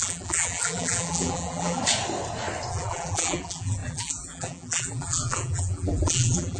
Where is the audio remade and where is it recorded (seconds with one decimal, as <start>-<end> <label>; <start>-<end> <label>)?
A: 0.0-1.8 remade; 1.8-2.7 recorded; 2.7-6.6 remade